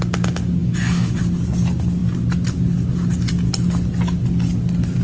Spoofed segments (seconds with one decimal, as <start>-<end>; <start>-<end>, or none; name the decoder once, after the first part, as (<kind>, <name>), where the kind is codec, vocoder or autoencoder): 0.6-1.2 (autoencoder, DAC-VAE)